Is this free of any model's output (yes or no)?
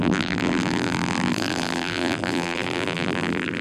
no